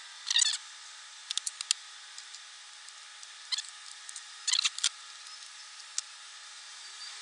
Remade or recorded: recorded